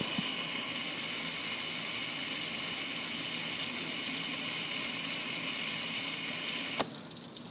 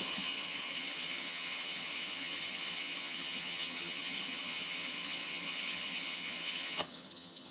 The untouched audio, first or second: first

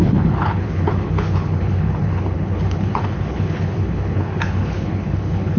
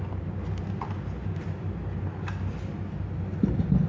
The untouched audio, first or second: second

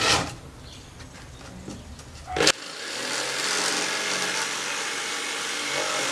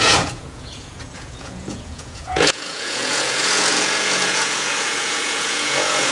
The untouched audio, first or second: first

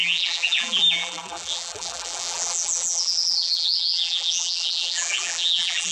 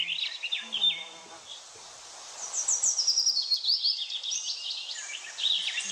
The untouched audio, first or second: second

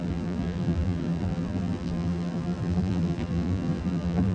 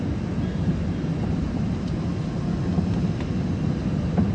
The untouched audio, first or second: second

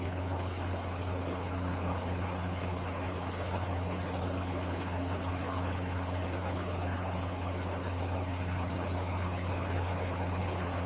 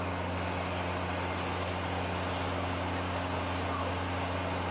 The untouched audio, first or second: second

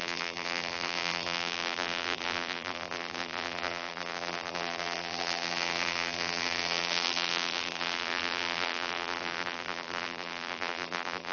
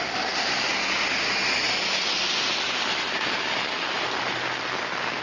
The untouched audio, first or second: second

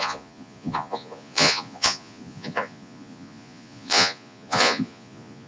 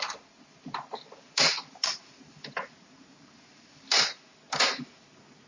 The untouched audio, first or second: second